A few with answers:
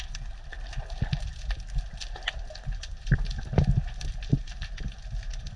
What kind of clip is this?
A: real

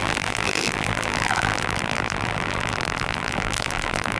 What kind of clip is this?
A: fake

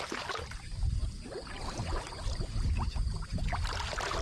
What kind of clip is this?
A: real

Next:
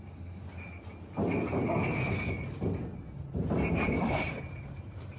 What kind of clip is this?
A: real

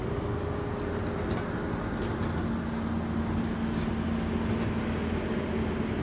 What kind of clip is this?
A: real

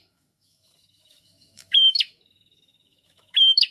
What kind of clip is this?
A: fake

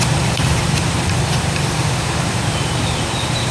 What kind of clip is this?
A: fake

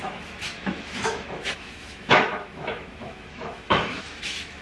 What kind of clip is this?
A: fake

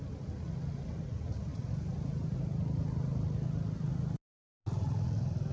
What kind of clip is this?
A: real